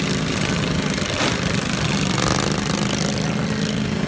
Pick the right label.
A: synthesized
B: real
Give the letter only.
B